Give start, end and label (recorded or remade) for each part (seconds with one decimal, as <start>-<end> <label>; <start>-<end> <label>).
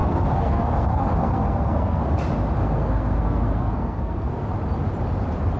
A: 0.0-2.0 remade; 2.0-2.6 recorded; 2.6-4.4 remade; 4.4-5.6 recorded